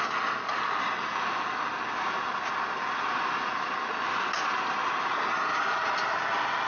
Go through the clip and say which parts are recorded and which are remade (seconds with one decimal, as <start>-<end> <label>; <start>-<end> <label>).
0.0-6.7 recorded